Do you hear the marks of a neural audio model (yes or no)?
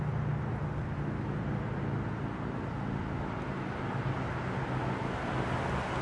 no